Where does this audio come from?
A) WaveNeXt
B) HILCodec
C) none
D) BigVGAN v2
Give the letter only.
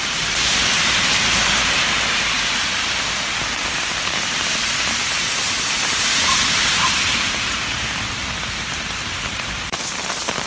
D